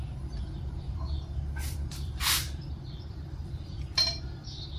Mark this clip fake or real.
fake